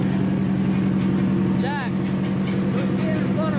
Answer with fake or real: real